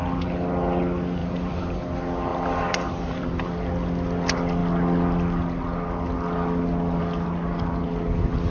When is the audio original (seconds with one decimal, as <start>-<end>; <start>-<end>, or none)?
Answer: 0.0-1.2; 1.8-2.3; 3.5-8.5